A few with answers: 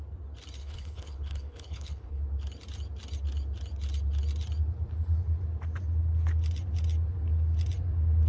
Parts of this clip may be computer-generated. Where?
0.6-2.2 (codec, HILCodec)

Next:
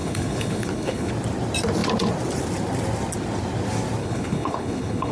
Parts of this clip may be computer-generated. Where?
0.0-1.1 (codec, HILCodec); 4.0-5.1

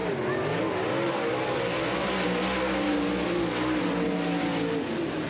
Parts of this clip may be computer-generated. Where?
none

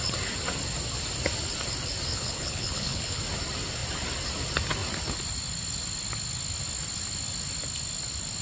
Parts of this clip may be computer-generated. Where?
2.1-3.2 (codec, HILCodec)

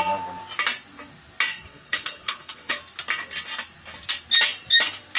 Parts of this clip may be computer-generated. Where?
1.5-2.8 (codec, HILCodec)

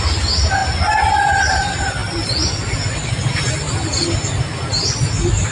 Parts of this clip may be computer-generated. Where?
none

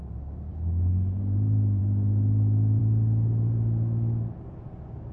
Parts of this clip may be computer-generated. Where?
0.5-1.2 (codec, HILCodec)

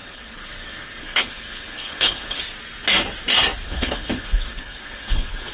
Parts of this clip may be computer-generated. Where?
0.0-2.4 (codec, HILCodec); 3.6-5.5